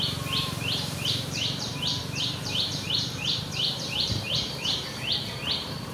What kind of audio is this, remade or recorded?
remade